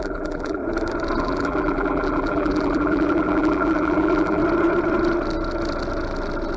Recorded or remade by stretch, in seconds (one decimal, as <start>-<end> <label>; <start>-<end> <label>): 0.0-0.6 remade; 0.6-1.2 recorded; 1.2-4.4 remade; 4.4-6.6 recorded